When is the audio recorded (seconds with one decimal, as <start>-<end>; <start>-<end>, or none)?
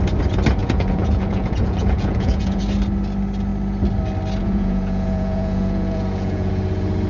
0.0-0.6; 2.6-4.4; 6.5-7.1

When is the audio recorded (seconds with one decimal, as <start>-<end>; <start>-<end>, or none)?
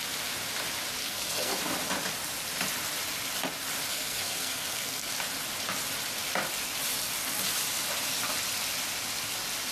0.0-1.0; 1.6-3.9; 5.1-9.7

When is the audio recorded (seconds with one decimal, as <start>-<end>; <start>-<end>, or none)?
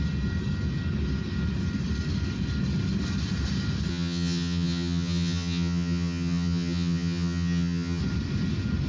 0.0-3.9; 8.0-8.9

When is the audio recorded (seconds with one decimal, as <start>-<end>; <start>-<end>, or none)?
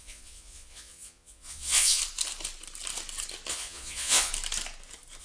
2.0-3.5; 4.3-5.2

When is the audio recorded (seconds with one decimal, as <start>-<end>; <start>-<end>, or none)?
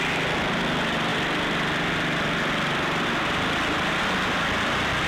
0.0-5.1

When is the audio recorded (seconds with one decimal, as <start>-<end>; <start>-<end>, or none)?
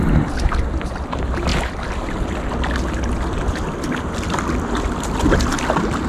0.0-6.1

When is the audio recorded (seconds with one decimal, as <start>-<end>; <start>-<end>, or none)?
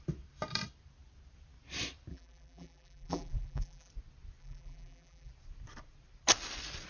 0.0-2.1; 3.9-4.4; 5.3-6.9